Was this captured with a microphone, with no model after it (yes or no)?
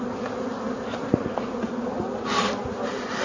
yes